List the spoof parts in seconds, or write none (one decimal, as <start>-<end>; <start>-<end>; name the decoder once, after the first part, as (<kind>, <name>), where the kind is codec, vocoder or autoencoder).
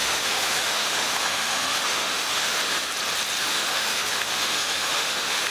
0.0-2.9 (autoencoder, DAC-VAE); 3.4-5.5